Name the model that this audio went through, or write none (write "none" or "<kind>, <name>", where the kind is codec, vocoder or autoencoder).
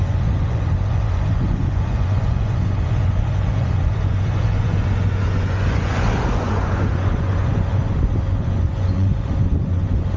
vocoder, Vocos